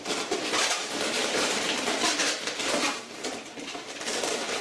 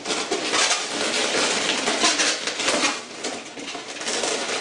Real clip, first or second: second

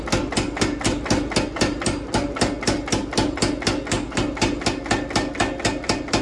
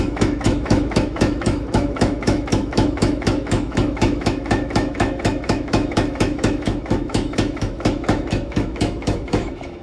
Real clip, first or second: first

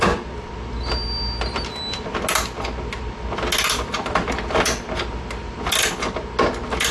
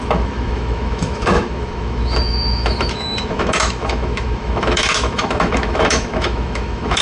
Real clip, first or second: first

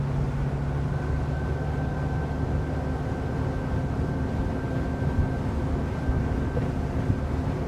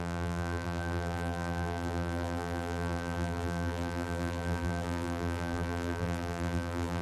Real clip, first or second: first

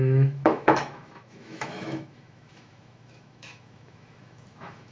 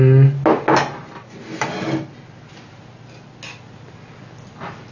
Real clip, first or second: second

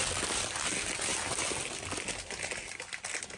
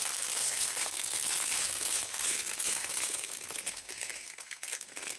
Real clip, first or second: first